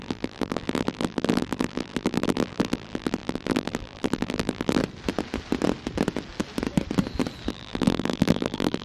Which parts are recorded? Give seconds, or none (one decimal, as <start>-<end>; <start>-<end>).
4.8-7.5